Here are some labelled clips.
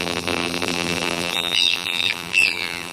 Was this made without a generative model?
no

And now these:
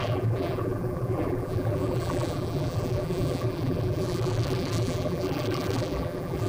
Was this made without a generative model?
no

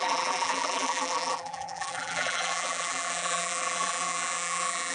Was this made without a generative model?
no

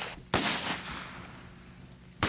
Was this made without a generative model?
yes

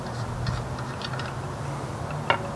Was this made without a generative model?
yes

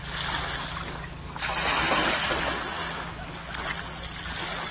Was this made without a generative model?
yes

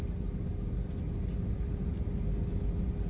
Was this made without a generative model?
yes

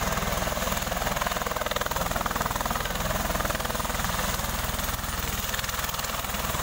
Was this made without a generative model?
yes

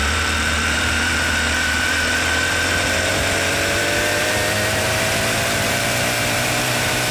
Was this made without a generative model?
no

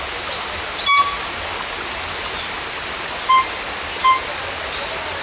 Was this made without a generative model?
yes